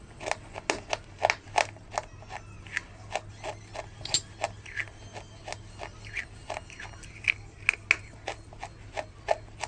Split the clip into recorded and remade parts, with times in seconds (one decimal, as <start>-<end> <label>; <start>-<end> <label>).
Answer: 0.0-9.7 recorded